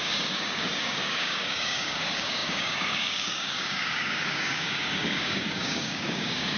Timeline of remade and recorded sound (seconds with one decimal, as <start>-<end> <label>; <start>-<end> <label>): 0.0-6.6 remade